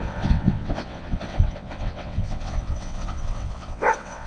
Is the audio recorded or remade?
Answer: remade